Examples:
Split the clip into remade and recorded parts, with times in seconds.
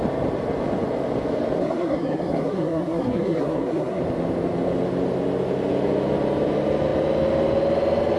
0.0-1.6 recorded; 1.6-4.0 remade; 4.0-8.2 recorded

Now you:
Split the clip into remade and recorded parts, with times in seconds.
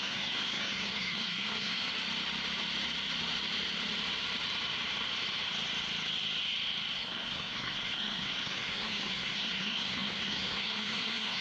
0.0-1.9 remade; 1.9-6.9 recorded; 6.9-11.4 remade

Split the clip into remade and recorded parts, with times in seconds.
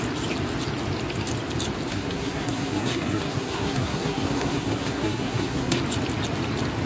0.0-1.9 recorded; 1.9-5.8 remade; 5.8-6.9 recorded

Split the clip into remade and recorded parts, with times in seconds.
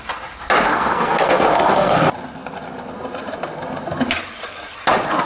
0.0-0.7 recorded; 0.7-1.9 remade; 1.9-5.3 recorded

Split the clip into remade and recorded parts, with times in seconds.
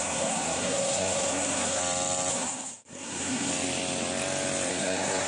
0.0-1.8 remade; 1.8-2.3 recorded; 2.3-3.5 remade; 3.5-4.7 recorded; 4.7-5.3 remade